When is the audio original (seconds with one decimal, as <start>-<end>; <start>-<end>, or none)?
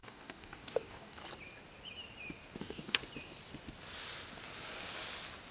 1.2-2.6; 3.0-5.5